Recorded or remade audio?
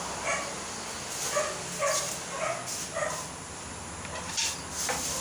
recorded